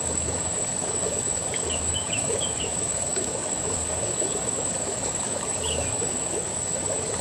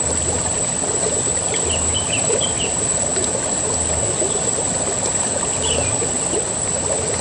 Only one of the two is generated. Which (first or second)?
first